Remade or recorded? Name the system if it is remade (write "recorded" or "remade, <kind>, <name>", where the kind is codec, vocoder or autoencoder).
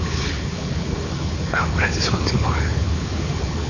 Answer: remade, codec, HILCodec